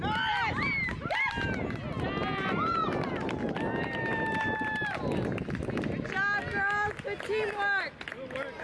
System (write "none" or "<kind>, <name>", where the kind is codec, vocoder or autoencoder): none